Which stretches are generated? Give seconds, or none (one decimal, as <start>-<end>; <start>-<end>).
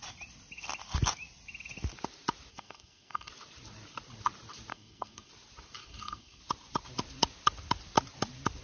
2.5-3.3; 4.7-5.3; 5.8-6.4